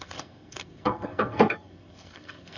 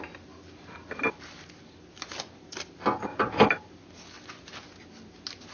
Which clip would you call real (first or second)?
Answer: second